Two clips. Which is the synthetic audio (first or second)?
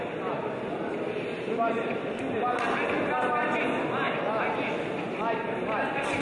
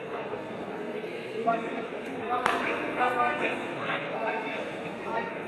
second